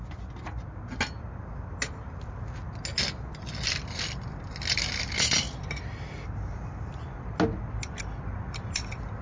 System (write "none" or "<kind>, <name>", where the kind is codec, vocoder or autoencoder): none